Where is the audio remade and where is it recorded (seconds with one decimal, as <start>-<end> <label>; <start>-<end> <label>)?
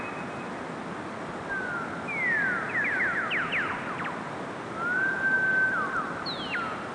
0.0-6.9 recorded